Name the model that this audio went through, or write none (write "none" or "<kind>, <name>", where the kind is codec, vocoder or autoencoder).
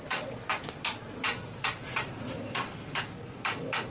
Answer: none